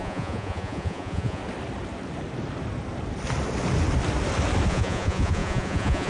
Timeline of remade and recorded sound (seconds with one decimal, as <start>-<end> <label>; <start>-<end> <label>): 0.0-1.4 remade; 1.4-4.7 recorded; 4.7-6.1 remade